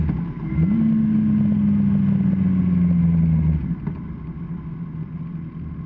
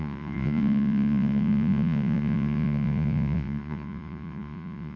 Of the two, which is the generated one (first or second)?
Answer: second